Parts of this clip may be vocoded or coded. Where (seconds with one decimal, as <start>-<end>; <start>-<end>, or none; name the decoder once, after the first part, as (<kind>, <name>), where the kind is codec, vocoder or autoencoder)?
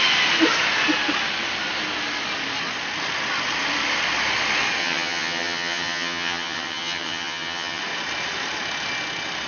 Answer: 4.8-7.8 (vocoder, HiFi-GAN)